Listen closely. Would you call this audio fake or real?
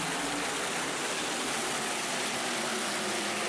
real